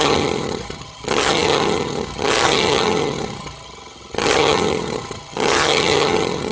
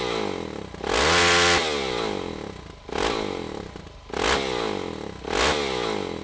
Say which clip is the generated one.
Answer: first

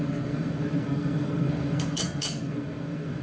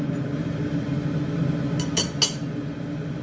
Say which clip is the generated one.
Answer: first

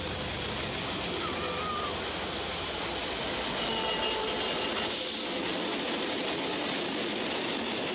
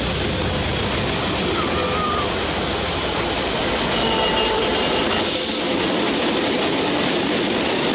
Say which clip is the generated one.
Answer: second